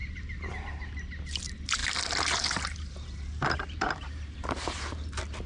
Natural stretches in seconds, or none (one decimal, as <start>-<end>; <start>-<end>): 0.5-1.8; 5.1-5.5